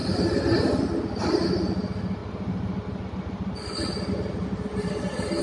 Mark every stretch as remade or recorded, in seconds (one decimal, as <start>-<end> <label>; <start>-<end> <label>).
0.0-2.2 recorded; 2.2-5.4 remade